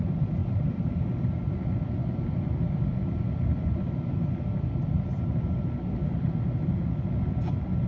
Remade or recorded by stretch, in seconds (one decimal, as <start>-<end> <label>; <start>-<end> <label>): 0.0-7.9 recorded